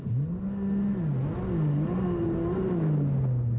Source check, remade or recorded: recorded